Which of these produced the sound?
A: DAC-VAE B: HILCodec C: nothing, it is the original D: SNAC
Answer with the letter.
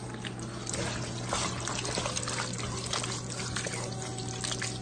C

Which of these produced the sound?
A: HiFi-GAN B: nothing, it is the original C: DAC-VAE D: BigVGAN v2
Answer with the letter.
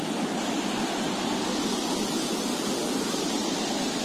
B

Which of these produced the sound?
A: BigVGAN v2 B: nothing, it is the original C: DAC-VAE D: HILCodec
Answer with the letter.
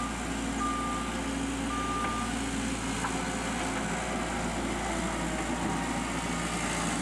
B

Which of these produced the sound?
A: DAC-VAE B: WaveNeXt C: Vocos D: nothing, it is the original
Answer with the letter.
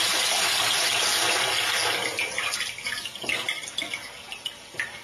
D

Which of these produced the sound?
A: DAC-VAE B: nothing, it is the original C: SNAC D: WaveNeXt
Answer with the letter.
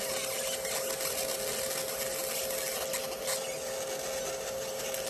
B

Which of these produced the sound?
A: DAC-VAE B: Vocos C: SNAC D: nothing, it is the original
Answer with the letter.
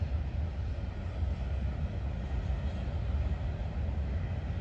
D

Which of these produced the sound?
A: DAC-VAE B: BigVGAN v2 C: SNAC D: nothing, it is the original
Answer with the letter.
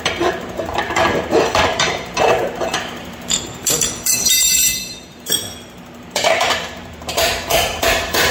B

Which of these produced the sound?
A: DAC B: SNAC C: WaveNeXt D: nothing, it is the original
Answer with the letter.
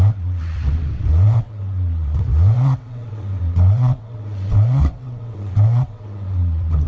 C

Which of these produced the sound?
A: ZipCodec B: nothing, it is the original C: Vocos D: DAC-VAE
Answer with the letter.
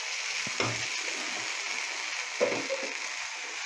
B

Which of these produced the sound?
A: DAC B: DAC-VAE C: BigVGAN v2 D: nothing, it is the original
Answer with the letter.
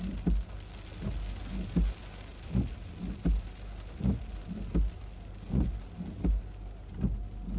D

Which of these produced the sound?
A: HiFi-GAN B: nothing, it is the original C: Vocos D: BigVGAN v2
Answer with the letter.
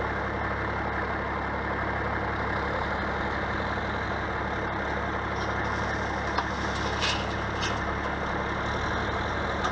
B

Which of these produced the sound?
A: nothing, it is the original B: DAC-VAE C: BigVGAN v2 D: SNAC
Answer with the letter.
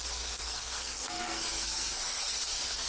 D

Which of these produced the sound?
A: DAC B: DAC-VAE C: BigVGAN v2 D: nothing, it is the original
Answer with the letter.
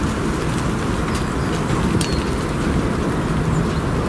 D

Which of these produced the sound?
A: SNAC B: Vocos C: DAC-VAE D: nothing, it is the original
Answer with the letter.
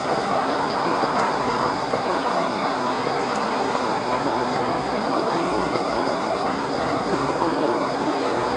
A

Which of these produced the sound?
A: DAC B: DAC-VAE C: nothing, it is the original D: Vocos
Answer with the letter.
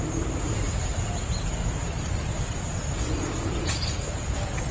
C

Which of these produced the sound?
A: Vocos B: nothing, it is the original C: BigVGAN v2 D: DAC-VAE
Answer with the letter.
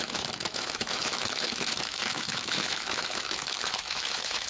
D